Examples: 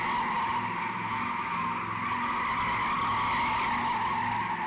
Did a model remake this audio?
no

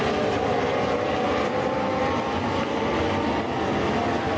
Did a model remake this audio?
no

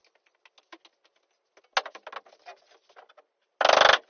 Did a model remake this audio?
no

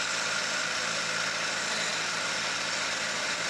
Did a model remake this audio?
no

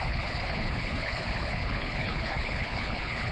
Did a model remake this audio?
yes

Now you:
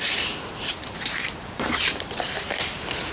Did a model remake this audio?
yes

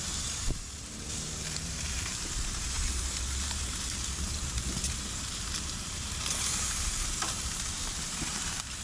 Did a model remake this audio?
yes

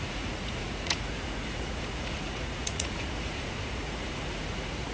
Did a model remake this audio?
yes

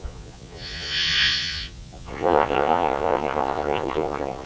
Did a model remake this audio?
yes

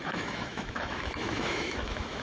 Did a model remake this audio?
yes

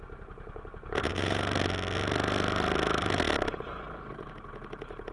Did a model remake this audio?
no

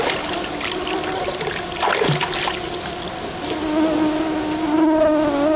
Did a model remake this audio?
no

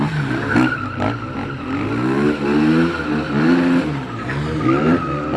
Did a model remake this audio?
no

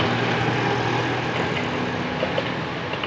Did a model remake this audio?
no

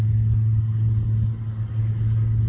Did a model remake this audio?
no